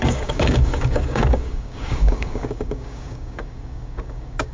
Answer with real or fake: fake